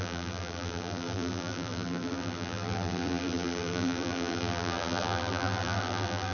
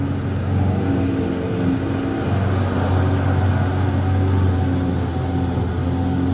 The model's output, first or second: first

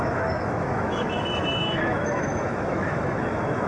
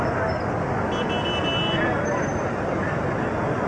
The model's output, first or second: first